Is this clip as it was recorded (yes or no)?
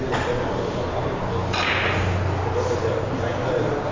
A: yes